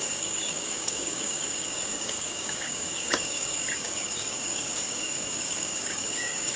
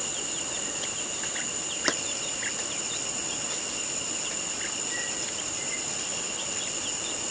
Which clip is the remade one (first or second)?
first